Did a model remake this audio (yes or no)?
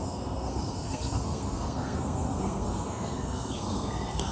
yes